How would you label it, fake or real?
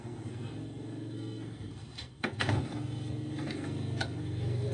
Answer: fake